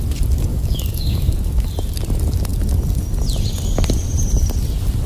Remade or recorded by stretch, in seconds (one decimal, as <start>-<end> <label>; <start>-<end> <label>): 0.0-0.5 recorded; 0.5-1.3 remade; 1.3-5.1 recorded

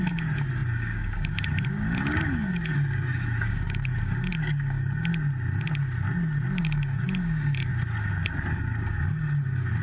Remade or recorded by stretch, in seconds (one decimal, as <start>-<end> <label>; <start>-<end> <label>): 0.0-5.1 remade; 5.1-6.6 recorded; 6.6-7.7 remade; 7.7-8.5 recorded; 8.5-9.8 remade

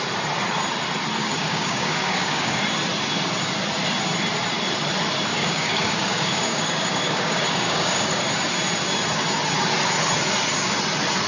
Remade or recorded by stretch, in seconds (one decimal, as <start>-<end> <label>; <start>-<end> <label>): 0.0-1.2 recorded; 1.2-2.6 remade; 2.6-5.3 recorded; 5.3-8.2 remade; 8.2-11.3 recorded

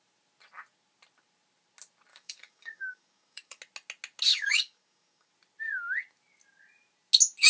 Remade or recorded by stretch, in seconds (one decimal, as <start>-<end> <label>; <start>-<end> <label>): 0.0-2.1 recorded; 2.1-3.6 remade; 3.6-4.3 recorded; 4.3-5.3 remade; 5.3-7.5 recorded

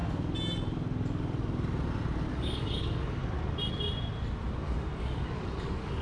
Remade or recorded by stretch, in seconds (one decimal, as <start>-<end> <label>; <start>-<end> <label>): 0.0-2.3 recorded; 2.3-3.2 remade; 3.2-4.5 recorded; 4.5-6.0 remade

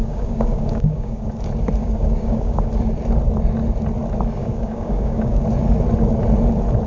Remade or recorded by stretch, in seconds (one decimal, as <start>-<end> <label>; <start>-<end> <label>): 0.0-1.3 remade; 1.3-1.8 recorded; 1.8-2.7 remade; 2.7-4.4 recorded; 4.4-5.4 remade; 5.4-6.9 recorded